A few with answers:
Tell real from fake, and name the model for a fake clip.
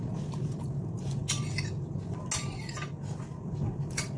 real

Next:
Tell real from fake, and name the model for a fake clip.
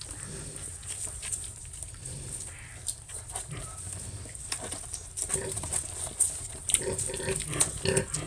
real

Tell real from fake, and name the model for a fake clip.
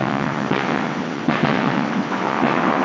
fake, vocoder, WaveNeXt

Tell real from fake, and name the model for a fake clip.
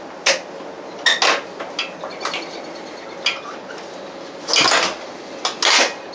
real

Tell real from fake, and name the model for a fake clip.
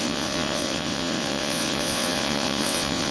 fake, vocoder, WaveNeXt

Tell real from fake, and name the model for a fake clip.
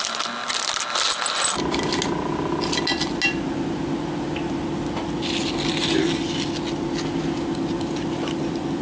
real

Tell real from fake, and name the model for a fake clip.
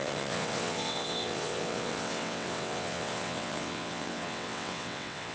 fake, vocoder, WaveNeXt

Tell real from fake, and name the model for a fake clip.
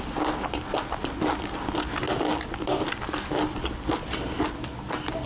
real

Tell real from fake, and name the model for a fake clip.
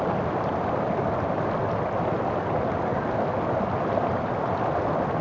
real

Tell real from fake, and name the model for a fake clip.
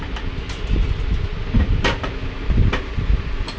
real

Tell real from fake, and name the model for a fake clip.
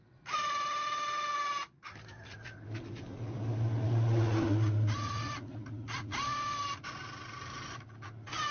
real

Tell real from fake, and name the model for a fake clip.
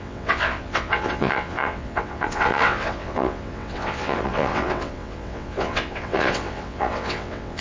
fake, vocoder, WaveNeXt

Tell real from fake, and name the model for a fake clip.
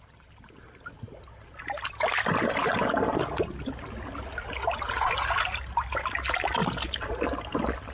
real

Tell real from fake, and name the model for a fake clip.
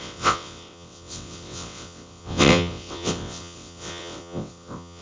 fake, vocoder, WaveNeXt